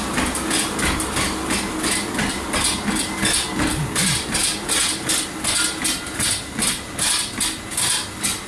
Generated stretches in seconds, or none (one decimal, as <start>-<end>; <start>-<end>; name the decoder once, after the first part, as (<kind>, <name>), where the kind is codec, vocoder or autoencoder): none